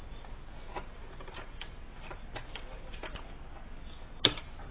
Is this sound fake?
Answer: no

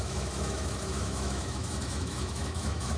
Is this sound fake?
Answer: yes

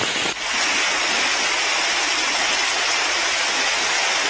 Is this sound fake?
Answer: no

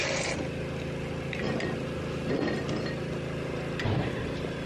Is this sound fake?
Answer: no